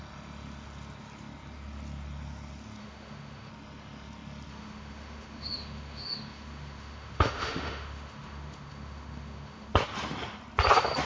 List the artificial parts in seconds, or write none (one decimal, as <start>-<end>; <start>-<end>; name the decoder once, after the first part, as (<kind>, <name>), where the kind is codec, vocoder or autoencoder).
2.8-3.5 (autoencoder, DAC-VAE); 4.5-9.7